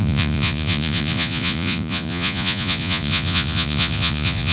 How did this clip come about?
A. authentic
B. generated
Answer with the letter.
B